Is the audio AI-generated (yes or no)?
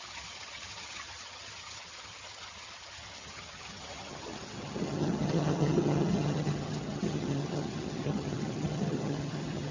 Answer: yes